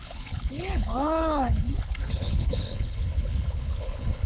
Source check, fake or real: fake